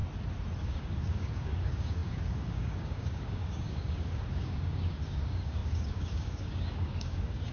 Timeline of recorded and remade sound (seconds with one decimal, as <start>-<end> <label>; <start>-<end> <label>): 0.0-0.6 recorded; 0.6-7.5 remade